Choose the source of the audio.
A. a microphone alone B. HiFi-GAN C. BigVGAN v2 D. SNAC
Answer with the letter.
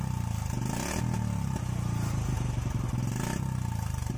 A